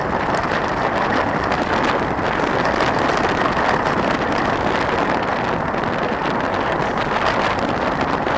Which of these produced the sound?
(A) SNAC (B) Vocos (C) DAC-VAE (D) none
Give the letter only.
D